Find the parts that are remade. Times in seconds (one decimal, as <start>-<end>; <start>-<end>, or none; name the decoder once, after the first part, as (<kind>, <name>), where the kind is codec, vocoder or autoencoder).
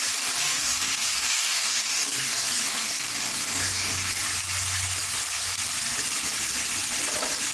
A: 0.4-4.2 (codec, DAC)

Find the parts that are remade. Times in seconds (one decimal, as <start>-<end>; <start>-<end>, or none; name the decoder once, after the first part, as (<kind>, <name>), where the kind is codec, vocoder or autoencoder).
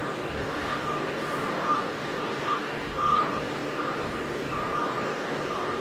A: 0.0-5.8 (codec, DAC)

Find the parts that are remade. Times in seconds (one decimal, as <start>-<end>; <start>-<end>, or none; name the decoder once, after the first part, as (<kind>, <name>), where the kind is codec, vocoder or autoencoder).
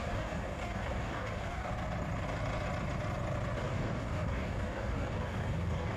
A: 0.0-1.7 (codec, DAC); 3.6-6.0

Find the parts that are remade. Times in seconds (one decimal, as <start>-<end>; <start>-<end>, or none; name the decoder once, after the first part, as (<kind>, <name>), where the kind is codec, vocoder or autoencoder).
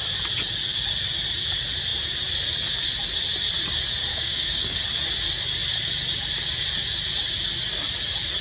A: 4.1-4.8 (codec, DAC)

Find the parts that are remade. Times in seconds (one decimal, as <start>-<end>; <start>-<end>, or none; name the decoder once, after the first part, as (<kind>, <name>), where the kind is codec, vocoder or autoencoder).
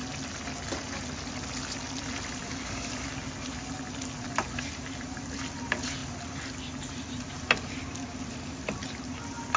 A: 2.4-2.9 (codec, DAC)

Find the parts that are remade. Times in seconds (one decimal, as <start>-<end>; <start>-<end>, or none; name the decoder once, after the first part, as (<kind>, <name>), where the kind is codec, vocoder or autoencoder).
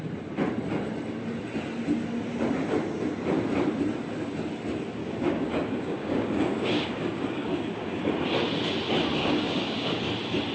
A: 5.0-8.1 (codec, DAC); 9.2-10.0